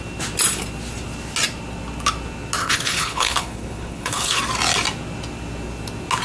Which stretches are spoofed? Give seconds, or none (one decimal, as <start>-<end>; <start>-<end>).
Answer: 2.6-4.4